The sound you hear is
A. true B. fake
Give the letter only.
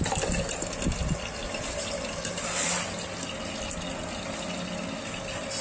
A